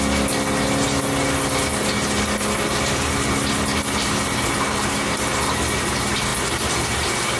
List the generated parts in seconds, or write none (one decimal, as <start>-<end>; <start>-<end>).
none